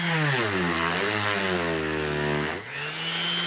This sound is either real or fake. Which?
real